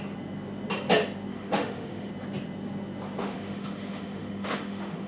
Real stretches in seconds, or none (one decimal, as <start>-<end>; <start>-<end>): 0.0-1.3; 2.1-3.2